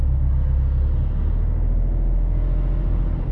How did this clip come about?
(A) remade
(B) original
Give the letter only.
B